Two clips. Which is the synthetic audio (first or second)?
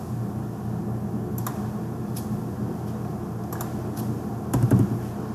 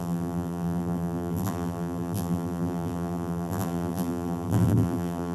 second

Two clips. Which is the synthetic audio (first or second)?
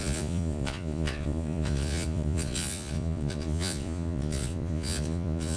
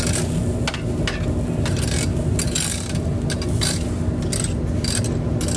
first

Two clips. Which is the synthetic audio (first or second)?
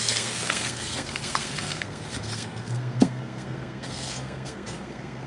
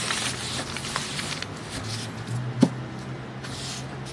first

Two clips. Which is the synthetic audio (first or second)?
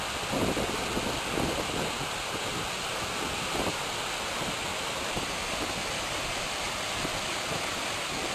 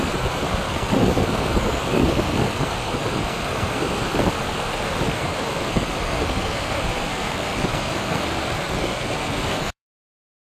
second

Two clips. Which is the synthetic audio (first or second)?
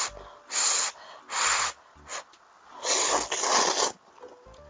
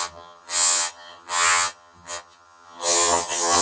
second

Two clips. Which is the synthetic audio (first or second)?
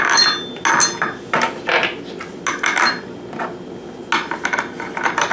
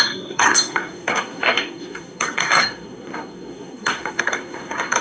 second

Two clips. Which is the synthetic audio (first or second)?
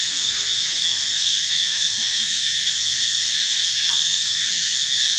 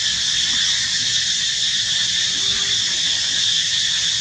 first